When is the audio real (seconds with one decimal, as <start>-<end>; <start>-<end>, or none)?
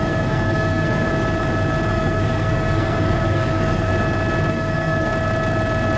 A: 1.1-1.9; 3.9-4.5; 5.1-6.0